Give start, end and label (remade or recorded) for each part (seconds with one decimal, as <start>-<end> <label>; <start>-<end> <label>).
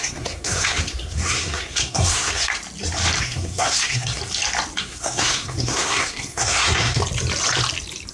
0.0-2.5 remade; 2.5-3.2 recorded; 3.2-4.2 remade; 4.2-4.8 recorded; 4.8-7.0 remade; 7.0-8.1 recorded